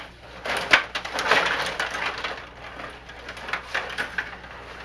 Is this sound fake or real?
real